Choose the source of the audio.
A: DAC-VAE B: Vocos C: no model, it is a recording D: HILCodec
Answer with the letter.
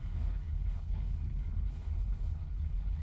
D